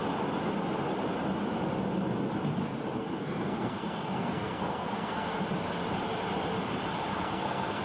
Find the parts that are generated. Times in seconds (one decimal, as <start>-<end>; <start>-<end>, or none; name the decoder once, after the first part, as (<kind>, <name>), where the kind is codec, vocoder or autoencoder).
3.0-5.4 (codec, SNAC); 7.1-7.8